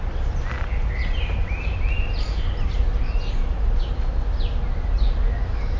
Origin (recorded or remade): recorded